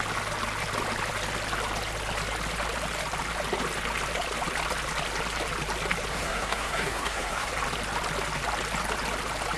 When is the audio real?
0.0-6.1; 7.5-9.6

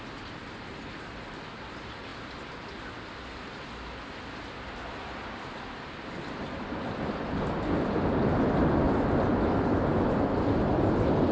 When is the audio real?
0.0-11.3

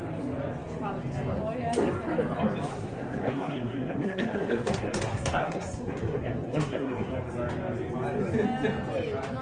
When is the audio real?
0.0-2.7; 7.1-9.4

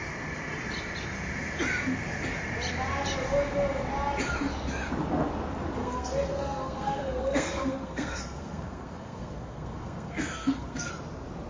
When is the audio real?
0.0-5.8; 10.9-11.5

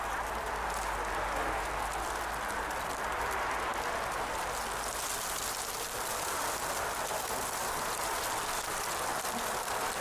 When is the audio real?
0.0-10.0

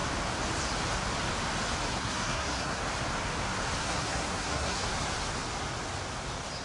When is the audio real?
0.0-1.9; 2.8-3.8; 4.9-6.6

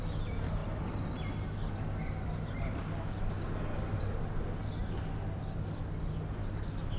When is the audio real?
0.0-7.0